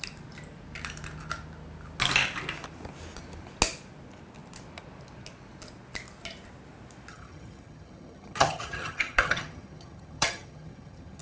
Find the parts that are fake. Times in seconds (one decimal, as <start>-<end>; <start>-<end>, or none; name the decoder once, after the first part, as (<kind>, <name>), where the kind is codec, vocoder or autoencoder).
7.1-11.2 (vocoder, HiFi-GAN)